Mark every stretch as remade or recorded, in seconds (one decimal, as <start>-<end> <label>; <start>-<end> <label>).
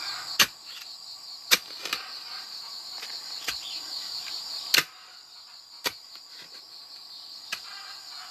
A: 0.0-1.8 recorded; 1.8-4.4 remade; 4.4-8.3 recorded